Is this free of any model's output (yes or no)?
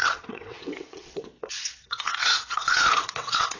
no